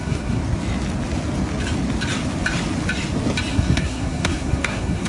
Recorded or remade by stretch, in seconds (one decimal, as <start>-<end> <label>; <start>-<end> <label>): 0.0-0.4 remade; 0.4-3.5 recorded; 3.5-5.1 remade